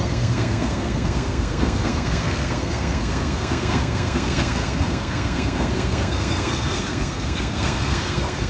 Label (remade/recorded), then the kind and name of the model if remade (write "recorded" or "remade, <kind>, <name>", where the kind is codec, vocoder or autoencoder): remade, codec, SNAC